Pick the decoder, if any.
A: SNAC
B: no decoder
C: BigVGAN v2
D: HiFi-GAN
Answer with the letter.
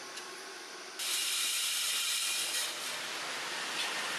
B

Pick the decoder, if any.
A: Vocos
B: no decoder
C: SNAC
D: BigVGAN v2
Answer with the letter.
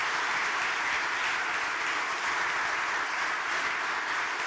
B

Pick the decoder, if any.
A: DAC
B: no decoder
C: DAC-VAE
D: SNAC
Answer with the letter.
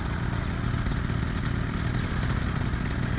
B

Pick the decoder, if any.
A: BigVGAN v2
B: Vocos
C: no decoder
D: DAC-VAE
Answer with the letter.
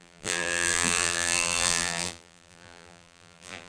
A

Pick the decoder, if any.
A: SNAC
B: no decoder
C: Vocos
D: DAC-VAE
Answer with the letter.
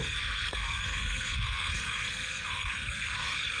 A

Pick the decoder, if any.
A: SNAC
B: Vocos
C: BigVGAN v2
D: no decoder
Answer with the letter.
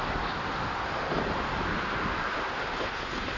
D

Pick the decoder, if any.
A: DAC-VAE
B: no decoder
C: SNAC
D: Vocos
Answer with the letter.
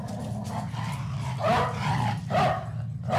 B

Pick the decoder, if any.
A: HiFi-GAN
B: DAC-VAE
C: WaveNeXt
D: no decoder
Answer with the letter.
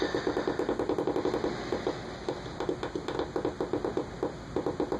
D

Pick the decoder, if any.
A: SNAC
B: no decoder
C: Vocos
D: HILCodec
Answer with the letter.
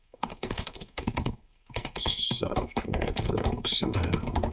A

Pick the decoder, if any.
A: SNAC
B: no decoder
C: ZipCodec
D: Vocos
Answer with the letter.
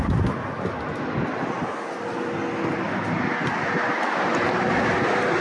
B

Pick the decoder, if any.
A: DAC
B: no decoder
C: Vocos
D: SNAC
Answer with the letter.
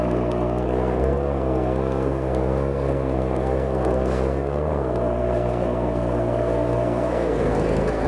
D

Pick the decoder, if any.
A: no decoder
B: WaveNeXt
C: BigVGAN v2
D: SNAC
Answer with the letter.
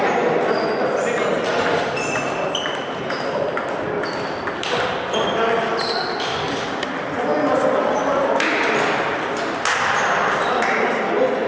A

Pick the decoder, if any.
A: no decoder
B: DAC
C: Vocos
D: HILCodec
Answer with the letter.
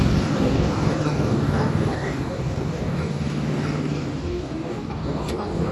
B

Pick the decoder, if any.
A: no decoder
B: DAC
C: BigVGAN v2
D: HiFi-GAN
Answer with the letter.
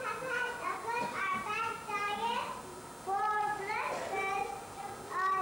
A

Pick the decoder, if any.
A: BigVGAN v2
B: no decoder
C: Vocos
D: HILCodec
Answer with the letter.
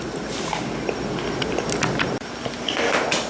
B